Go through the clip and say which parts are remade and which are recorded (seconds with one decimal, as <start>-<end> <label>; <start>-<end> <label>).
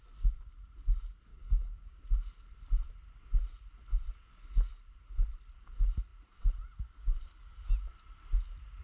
0.0-1.3 recorded; 1.3-2.0 remade; 2.0-8.8 recorded